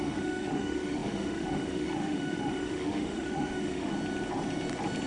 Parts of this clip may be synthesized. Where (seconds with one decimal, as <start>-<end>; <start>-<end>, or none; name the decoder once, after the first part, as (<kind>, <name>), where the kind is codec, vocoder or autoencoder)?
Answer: 0.0-3.9 (autoencoder, DAC-VAE)